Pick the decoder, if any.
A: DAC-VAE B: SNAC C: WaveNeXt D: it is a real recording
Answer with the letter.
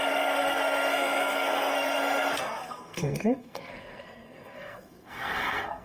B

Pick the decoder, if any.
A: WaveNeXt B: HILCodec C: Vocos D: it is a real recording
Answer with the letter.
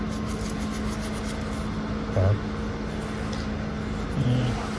D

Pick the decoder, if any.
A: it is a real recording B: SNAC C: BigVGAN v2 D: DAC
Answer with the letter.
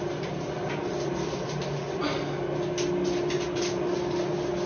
A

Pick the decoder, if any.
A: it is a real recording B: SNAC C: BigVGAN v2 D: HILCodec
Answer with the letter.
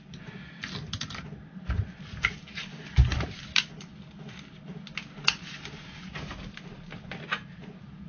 A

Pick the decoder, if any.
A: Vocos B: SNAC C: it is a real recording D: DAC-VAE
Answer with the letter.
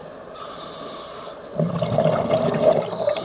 C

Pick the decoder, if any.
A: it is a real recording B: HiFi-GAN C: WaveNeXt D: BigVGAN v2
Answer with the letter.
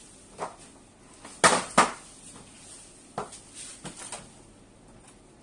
A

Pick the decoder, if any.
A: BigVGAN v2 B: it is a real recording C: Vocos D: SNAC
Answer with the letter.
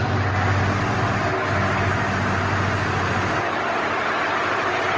B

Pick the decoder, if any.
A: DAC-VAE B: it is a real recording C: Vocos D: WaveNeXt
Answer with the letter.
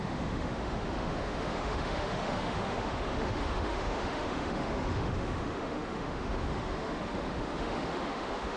A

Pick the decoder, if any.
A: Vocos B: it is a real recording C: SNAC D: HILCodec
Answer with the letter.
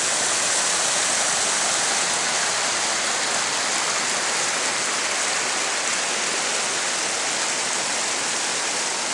B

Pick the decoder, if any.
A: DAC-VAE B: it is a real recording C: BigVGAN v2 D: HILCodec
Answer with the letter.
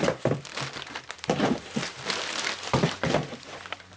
C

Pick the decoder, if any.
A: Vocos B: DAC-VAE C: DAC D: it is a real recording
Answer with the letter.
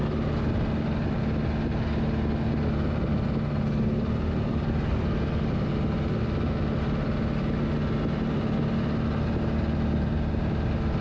D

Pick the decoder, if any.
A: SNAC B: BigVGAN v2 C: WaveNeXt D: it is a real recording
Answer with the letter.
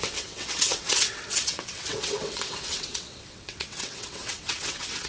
C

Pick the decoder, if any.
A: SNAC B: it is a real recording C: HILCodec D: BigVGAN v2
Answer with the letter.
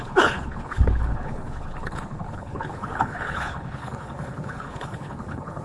C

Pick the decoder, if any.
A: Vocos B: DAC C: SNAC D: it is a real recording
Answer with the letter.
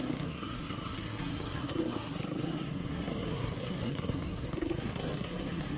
C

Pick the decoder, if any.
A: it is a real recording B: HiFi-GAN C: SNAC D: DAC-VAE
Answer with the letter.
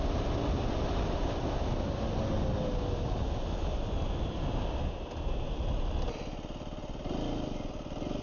A